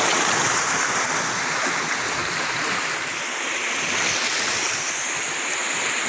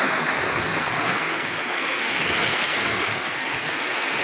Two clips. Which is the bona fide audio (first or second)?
first